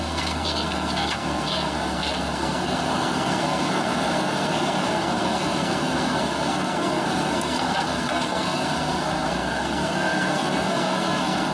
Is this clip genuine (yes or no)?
no